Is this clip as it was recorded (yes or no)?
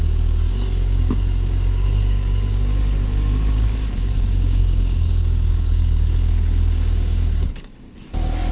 no